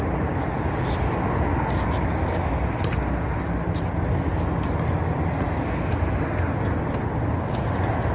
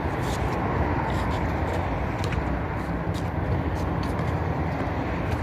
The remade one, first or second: second